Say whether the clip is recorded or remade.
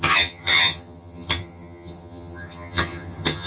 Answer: remade